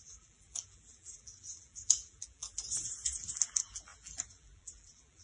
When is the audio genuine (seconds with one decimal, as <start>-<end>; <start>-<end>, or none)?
none